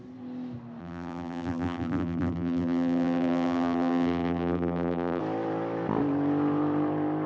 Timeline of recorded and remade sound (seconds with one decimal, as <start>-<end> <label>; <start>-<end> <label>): 0.0-0.8 recorded; 0.8-5.2 remade; 5.2-7.3 recorded

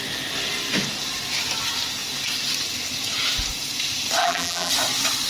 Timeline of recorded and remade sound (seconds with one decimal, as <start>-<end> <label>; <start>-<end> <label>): 0.0-4.2 recorded; 4.2-4.7 remade; 4.7-5.3 recorded